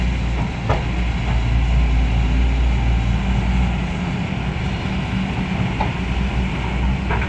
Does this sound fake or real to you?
real